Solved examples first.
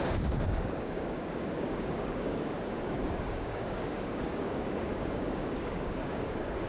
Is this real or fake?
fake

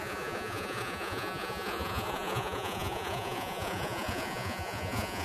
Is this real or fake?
fake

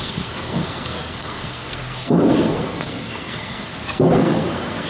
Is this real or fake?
fake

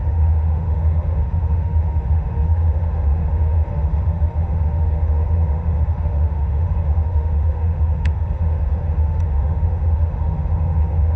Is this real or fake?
fake